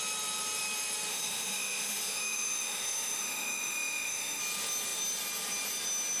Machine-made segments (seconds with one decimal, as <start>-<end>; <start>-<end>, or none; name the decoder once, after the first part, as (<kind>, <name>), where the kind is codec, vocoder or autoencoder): 1.1-4.4 (autoencoder, DAC-VAE)